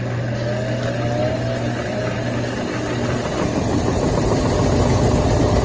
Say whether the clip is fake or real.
real